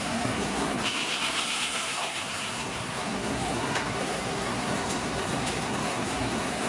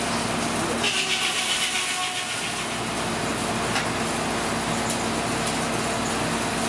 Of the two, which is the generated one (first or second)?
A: first